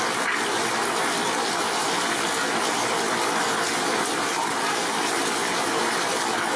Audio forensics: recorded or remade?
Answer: recorded